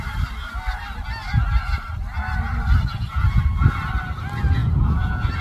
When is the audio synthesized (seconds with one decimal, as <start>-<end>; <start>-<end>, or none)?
2.9-3.4; 4.6-5.4